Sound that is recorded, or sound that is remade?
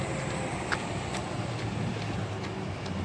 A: recorded